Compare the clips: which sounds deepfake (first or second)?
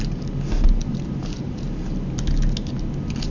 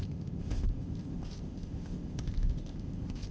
second